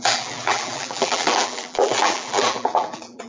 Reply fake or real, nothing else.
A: fake